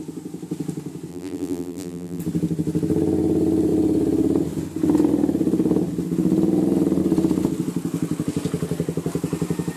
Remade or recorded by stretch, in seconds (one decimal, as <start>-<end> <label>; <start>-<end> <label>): 0.0-1.1 recorded; 1.1-2.2 remade; 2.2-9.8 recorded